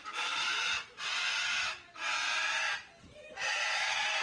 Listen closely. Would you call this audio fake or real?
real